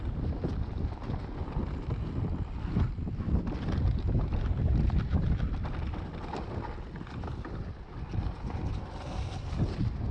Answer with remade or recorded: recorded